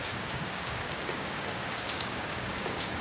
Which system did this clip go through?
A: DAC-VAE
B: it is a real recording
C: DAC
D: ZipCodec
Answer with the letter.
C